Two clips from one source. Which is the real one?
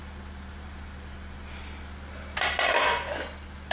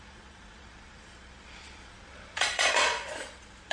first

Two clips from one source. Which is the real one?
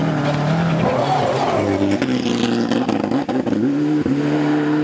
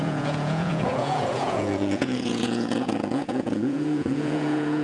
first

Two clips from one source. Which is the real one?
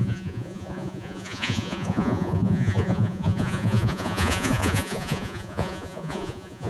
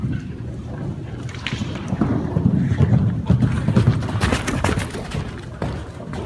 second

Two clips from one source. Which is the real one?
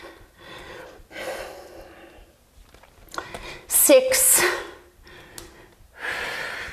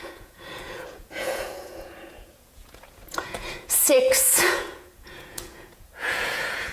first